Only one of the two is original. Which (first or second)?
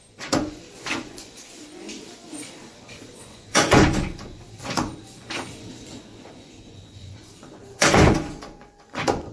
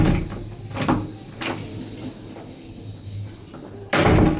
second